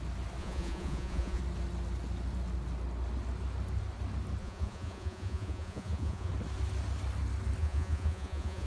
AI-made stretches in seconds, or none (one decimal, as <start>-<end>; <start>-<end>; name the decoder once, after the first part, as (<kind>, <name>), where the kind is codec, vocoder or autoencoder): 0.4-1.4 (vocoder, Vocos); 4.4-6.3; 7.6-8.7

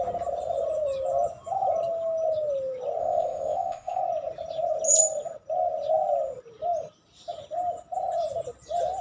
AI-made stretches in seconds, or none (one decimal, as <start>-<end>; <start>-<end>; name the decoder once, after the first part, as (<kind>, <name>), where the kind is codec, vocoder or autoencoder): 3.0-4.0 (codec, ZipCodec)

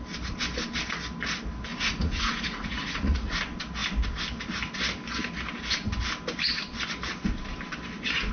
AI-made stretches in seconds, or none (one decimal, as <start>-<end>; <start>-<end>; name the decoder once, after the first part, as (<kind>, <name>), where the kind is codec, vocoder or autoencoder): 1.7-3.4 (vocoder, Vocos)

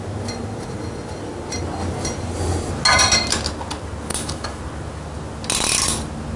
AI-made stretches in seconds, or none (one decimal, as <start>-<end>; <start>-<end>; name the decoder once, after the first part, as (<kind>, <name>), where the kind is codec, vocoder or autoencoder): 4.1-4.6 (autoencoder, DAC-VAE)

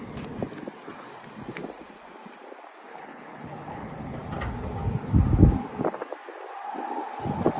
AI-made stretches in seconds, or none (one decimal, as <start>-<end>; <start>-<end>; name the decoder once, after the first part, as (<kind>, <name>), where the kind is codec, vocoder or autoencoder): 2.9-4.2 (codec, HILCodec)

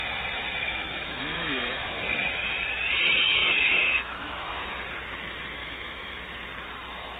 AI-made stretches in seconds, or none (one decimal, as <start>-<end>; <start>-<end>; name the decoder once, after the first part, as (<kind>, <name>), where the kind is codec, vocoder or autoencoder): 0.6-2.0 (autoencoder, DAC-VAE); 3.4-4.6; 5.6-6.2

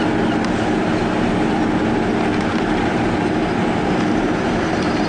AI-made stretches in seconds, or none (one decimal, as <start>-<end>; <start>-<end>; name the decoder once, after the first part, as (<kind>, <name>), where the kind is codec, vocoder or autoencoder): 2.3-5.1 (vocoder, BigVGAN v2)